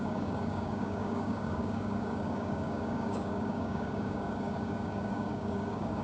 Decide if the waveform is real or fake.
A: fake